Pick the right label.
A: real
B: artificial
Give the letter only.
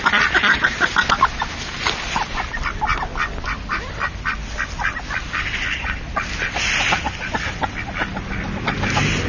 A